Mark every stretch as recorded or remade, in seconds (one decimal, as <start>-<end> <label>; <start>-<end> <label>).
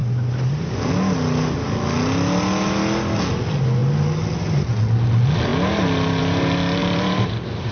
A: 0.0-0.9 remade; 0.9-6.8 recorded; 6.8-7.7 remade